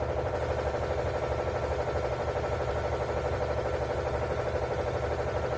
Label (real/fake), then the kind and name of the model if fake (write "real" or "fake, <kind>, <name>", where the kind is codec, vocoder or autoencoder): real